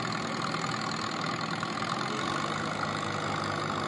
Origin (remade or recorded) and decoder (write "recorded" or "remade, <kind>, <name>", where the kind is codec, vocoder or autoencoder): recorded